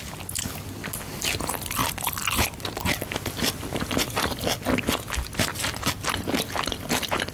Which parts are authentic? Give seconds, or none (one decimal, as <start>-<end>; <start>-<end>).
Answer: 0.0-7.3